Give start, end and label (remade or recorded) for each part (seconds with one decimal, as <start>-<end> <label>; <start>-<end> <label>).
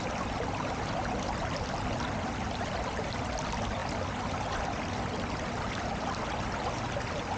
0.0-7.4 recorded